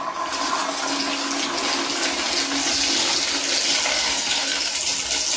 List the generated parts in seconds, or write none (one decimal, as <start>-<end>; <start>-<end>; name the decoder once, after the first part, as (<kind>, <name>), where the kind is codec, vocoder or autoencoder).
3.9-4.7 (codec, SNAC)